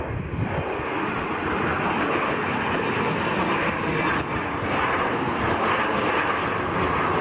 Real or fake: real